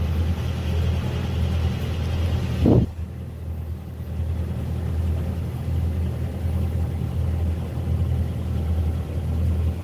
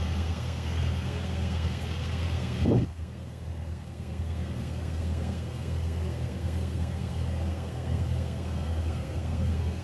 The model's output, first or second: second